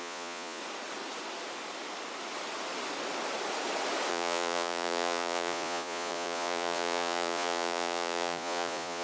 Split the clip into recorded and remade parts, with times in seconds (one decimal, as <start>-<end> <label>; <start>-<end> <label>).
0.0-0.6 remade; 0.6-4.1 recorded; 4.1-9.0 remade